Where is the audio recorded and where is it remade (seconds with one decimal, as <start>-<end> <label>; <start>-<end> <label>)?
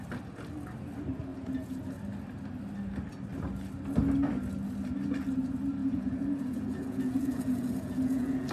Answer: 0.0-1.3 recorded; 1.3-1.8 remade; 1.8-5.8 recorded; 5.8-8.5 remade